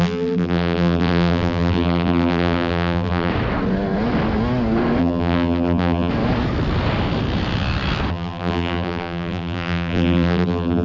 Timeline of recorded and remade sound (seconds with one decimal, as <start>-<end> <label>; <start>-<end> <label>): 0.0-3.3 remade; 3.3-5.0 recorded; 5.0-6.1 remade; 6.1-8.1 recorded; 8.1-10.8 remade